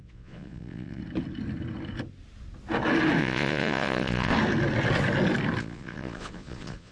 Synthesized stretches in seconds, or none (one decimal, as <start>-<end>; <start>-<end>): 0.0-1.0; 3.2-4.3; 5.6-6.9